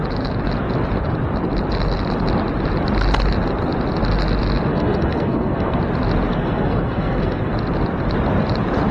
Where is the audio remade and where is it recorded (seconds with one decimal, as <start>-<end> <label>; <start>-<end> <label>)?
0.0-4.7 recorded; 4.7-5.8 remade; 5.8-6.3 recorded; 6.3-7.5 remade; 7.5-8.9 recorded